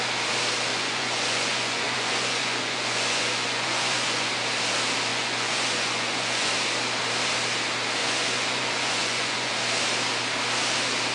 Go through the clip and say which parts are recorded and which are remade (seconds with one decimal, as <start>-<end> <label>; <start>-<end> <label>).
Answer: 0.0-0.7 recorded; 0.7-4.3 remade; 4.3-5.1 recorded; 5.1-6.5 remade; 6.5-8.0 recorded; 8.0-9.5 remade; 9.5-11.1 recorded